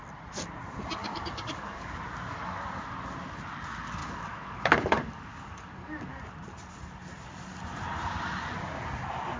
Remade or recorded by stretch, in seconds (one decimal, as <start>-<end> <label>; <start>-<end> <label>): 0.0-1.0 recorded; 1.0-2.0 remade; 2.0-4.0 recorded; 4.0-6.2 remade; 6.2-9.4 recorded